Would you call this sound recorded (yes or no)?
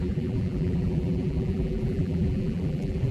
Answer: no